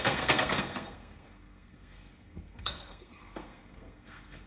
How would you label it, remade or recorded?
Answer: remade